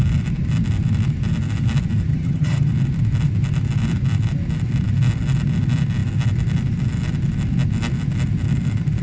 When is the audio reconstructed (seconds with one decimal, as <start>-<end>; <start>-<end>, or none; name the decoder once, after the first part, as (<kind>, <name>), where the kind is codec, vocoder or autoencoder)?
2.1-2.7 (vocoder, HiFi-GAN)